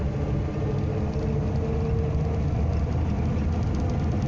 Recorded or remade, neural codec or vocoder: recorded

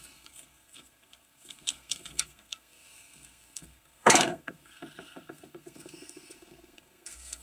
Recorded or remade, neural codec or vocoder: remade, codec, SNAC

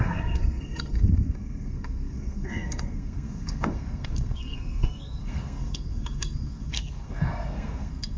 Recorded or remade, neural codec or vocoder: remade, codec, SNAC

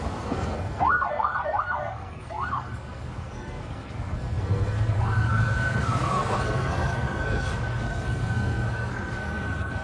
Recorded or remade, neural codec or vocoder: remade, codec, SNAC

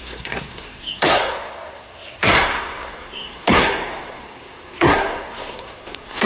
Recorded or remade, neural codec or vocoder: remade, codec, SNAC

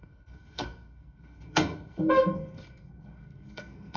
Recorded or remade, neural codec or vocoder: remade, codec, SNAC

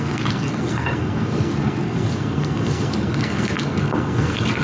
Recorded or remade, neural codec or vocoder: remade, codec, SNAC